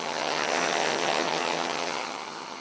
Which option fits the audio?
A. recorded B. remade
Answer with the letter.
B